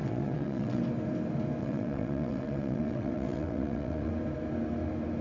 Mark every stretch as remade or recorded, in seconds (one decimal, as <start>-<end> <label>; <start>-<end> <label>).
0.0-0.8 remade; 0.8-1.6 recorded; 1.6-4.1 remade; 4.1-5.2 recorded